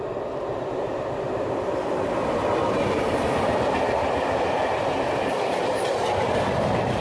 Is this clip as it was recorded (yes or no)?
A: yes